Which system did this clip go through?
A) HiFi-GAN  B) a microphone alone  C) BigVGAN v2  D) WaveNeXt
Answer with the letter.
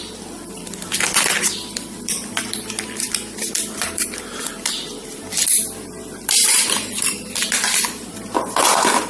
C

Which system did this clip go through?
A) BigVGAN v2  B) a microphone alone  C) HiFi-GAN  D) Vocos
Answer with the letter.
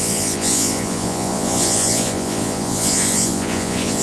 D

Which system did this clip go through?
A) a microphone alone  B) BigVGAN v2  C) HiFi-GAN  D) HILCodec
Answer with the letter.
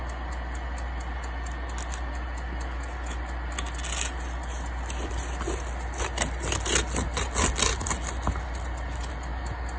A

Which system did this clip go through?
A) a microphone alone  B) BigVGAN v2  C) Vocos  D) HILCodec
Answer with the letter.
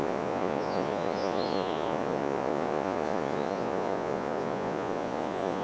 C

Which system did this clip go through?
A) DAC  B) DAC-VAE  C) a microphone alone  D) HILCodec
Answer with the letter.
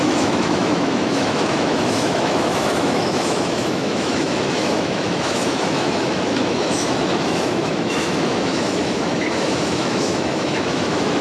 B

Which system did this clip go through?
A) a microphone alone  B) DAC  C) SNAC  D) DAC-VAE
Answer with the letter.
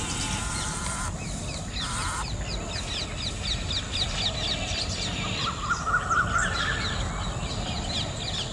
A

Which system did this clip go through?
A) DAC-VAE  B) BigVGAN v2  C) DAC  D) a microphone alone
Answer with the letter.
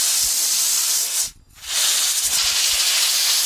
D